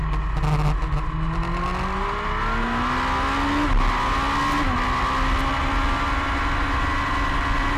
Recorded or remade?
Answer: recorded